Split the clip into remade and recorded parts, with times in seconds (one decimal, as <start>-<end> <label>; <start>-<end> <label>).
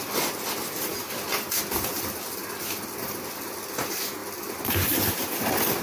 0.0-5.8 recorded